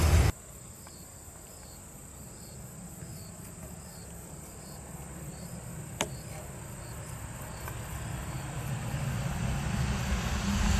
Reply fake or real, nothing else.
real